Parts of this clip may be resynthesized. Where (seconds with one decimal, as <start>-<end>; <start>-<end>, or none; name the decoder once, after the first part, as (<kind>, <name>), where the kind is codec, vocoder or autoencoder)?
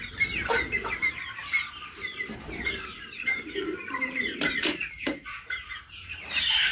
0.0-6.7 (vocoder, BigVGAN v2)